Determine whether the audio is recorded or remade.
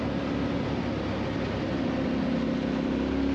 recorded